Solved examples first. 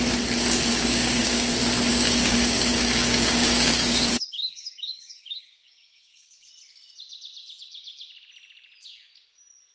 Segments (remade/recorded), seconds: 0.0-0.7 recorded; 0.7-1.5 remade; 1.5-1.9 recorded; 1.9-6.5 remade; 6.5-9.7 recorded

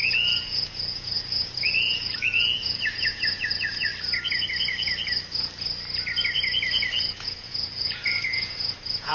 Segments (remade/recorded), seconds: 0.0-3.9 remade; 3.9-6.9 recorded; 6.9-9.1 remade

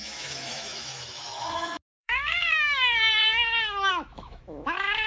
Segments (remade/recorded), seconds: 0.0-5.1 remade

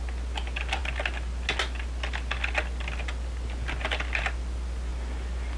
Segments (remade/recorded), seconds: 0.0-5.6 recorded